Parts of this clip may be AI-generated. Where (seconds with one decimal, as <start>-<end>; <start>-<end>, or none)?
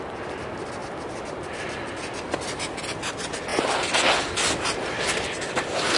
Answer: none